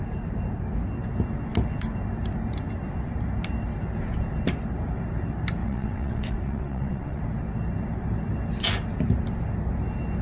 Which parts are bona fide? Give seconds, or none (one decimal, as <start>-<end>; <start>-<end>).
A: 0.0-5.6; 7.2-10.2